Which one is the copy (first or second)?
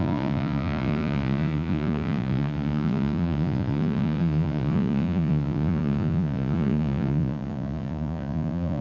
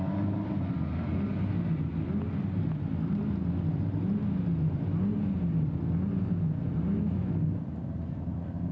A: first